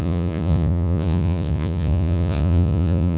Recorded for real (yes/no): no